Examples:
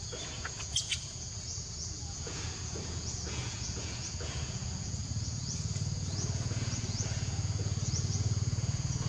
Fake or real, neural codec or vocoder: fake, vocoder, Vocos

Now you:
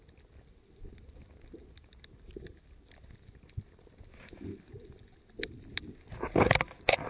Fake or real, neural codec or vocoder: real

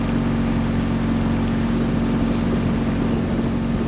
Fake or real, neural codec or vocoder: real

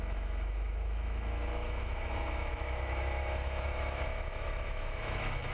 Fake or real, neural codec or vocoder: fake, autoencoder, DAC-VAE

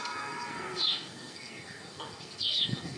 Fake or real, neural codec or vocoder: fake, codec, SNAC